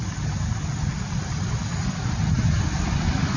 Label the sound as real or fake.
real